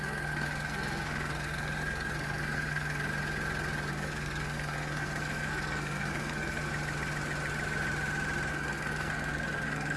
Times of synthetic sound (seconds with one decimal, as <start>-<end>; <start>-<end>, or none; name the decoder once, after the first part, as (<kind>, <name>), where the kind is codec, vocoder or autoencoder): 0.0-3.1 (codec, SNAC); 3.9-6.7; 8.5-10.0